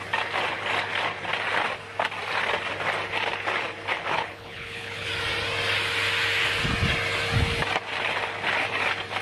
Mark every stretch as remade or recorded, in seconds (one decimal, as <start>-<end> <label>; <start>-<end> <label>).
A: 0.0-4.1 recorded; 4.1-5.1 remade; 5.1-9.2 recorded